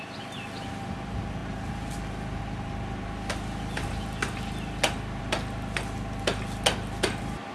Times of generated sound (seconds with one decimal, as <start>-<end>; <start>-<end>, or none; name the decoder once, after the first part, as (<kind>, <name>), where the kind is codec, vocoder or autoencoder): none

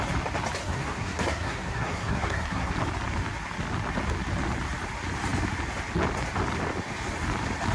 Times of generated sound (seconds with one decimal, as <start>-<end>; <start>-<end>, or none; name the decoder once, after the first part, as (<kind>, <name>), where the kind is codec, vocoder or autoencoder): 0.6-2.7 (codec, SNAC)

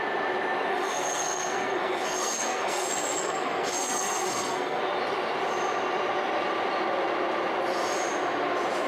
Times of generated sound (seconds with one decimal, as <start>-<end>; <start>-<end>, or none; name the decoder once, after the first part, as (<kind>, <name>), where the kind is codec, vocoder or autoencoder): 0.7-4.8 (codec, SNAC)

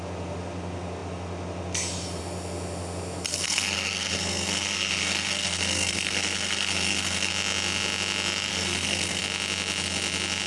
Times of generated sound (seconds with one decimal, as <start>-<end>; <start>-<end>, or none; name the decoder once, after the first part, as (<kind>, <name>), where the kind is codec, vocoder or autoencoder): 3.3-7.3 (codec, SNAC); 8.5-9.2

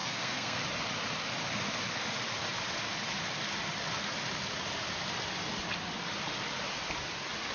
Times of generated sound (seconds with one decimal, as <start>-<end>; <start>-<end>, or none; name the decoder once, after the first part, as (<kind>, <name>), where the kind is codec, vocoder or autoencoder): 0.0-0.6 (codec, SNAC)

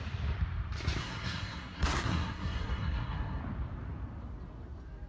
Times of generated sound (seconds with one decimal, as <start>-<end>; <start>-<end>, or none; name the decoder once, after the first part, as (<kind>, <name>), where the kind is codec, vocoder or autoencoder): 1.0-3.4 (codec, SNAC)